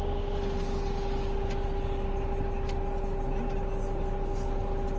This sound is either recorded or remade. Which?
recorded